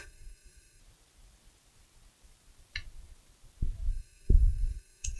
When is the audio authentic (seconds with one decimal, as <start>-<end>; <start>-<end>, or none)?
0.8-3.9